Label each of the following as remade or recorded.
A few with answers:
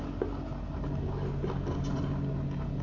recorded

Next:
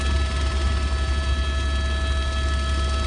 recorded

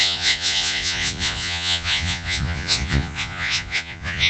remade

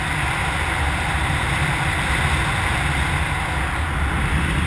recorded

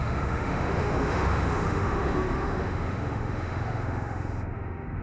remade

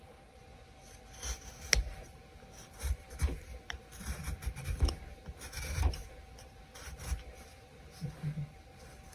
remade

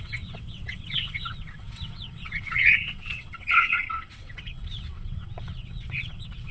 remade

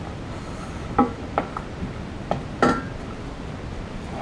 recorded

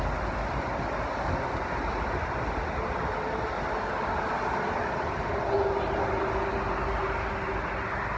recorded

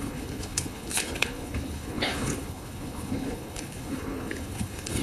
remade